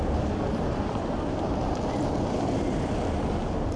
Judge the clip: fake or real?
real